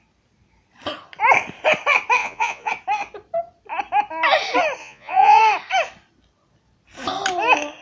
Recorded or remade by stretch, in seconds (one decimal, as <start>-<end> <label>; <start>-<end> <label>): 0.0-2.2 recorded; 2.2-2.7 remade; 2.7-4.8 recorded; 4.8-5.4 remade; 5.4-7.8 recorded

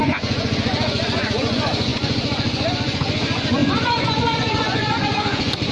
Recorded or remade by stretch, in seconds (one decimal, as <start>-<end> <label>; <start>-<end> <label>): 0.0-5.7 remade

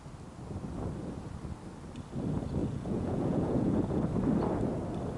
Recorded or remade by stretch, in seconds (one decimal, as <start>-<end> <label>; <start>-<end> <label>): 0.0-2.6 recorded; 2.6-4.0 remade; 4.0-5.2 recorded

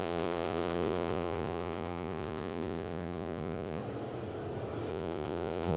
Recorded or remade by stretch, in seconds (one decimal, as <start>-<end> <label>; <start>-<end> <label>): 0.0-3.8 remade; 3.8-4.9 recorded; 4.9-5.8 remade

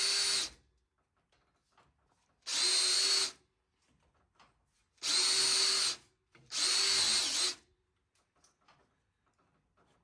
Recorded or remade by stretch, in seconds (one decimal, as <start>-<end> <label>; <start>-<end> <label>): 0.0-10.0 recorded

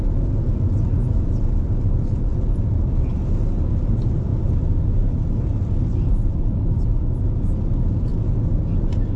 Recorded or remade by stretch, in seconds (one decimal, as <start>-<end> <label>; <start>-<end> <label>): 0.0-9.2 recorded